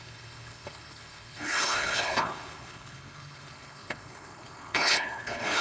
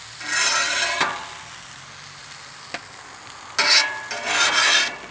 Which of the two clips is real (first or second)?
second